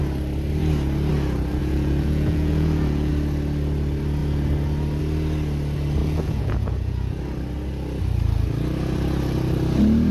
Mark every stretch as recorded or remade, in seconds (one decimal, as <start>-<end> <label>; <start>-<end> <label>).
0.0-1.6 recorded; 1.6-3.1 remade; 3.1-6.0 recorded; 6.0-7.2 remade; 7.2-10.1 recorded